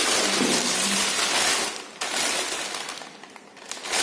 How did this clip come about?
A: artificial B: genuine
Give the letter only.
B